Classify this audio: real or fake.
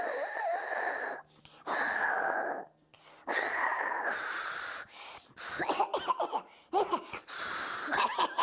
real